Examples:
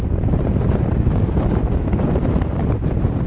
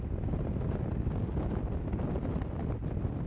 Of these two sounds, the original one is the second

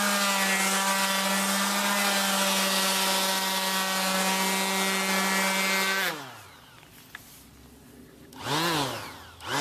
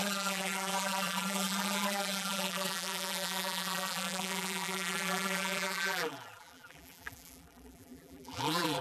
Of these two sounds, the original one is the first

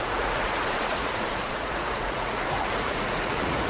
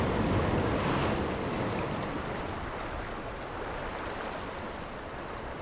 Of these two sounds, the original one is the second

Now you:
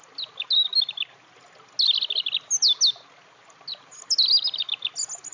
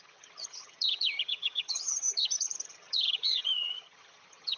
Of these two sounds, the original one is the first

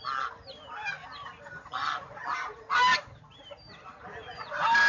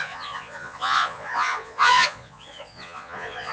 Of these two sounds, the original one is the first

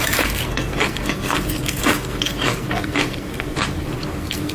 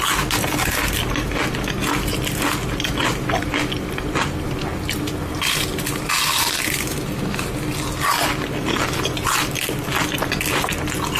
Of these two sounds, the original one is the second